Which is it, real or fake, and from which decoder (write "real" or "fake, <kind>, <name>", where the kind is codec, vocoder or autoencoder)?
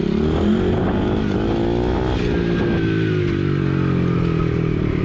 real